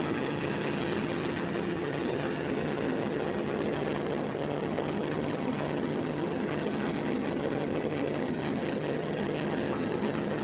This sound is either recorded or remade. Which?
remade